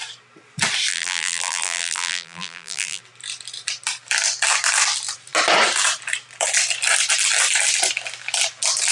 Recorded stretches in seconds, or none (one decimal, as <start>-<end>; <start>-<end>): 0.0-0.9; 3.0-8.9